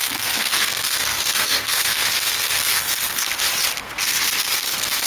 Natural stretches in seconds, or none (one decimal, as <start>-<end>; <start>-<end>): 3.3-3.8